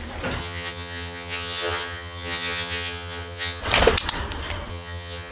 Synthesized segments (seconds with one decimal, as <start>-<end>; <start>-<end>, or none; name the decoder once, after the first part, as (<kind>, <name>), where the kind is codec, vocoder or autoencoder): 0.4-3.6 (vocoder, HiFi-GAN); 4.7-5.3